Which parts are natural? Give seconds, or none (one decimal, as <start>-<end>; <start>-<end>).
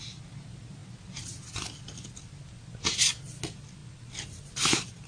0.0-5.1